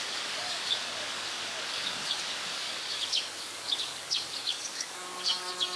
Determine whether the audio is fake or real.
fake